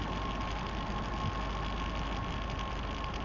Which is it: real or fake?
real